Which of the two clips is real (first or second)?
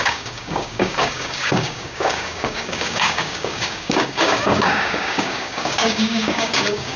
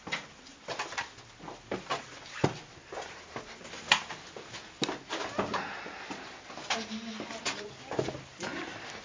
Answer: second